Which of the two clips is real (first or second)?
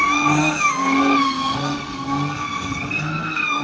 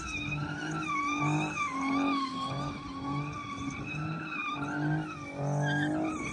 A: second